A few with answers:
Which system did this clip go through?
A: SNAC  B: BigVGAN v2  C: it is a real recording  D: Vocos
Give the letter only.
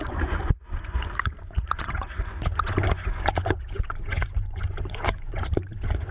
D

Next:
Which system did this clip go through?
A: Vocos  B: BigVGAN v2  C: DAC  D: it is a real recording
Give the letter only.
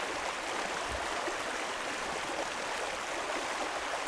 D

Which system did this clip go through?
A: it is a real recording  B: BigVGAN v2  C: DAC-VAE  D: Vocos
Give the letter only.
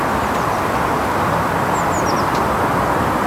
A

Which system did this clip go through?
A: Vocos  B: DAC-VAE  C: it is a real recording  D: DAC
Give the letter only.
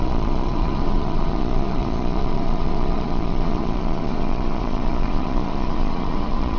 A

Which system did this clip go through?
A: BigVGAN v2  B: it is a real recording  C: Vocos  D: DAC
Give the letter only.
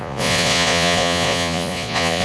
C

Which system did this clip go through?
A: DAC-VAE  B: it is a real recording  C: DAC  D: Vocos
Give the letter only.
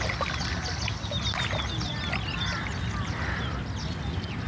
B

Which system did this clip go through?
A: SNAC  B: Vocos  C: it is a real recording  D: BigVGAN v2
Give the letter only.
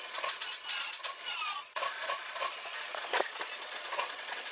B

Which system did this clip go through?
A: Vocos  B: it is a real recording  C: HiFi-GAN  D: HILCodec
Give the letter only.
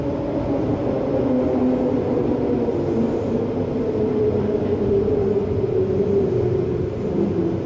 B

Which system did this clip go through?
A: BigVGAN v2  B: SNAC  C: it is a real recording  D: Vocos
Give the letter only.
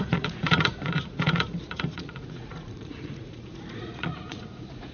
D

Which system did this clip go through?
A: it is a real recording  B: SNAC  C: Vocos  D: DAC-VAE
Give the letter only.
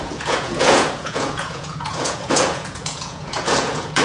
C